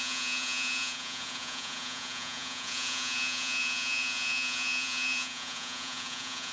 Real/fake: fake